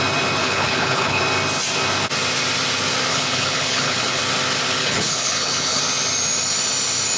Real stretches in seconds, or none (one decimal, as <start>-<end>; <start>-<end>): 0.0-0.4; 1.2-3.1; 4.2-4.8; 5.8-7.2